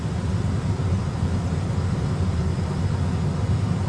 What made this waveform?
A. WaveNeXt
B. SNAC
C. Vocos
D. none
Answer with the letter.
D